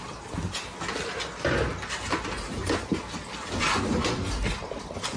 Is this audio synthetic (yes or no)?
no